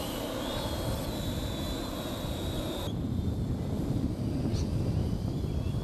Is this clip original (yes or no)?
yes